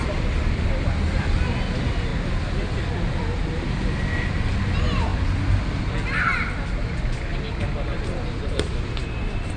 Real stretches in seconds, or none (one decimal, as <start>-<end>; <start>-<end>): 0.0-7.3; 8.0-9.6